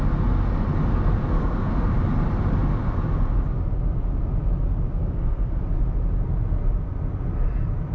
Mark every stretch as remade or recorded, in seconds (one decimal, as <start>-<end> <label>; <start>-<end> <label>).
0.0-0.9 recorded; 0.9-1.8 remade; 1.8-5.0 recorded; 5.0-5.6 remade; 5.6-7.9 recorded